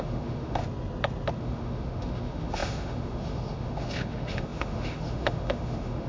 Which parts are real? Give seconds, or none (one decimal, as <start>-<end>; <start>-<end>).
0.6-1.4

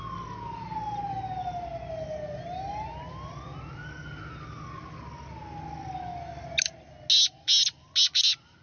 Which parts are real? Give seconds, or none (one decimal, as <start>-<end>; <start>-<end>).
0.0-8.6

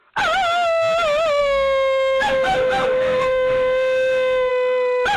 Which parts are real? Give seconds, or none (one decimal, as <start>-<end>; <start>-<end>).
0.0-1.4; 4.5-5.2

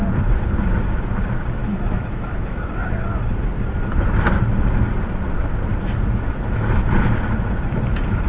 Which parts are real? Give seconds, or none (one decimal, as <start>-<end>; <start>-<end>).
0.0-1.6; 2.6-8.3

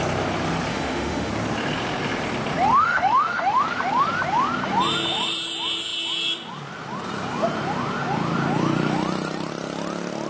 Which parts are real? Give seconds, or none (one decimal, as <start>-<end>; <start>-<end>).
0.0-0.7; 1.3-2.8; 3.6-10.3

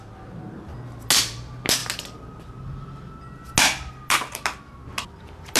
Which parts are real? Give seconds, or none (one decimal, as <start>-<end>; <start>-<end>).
0.0-5.6